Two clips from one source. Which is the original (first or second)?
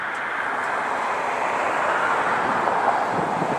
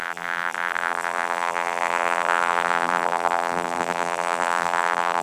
first